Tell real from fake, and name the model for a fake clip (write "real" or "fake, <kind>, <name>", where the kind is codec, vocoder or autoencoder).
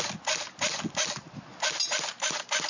real